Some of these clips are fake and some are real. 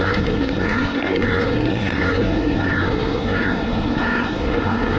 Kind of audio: fake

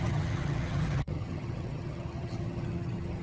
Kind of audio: fake